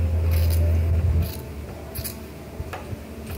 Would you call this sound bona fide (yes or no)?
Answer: yes